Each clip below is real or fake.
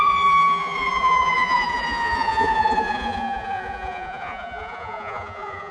fake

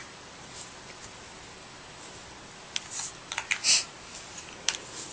real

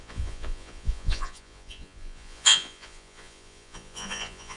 fake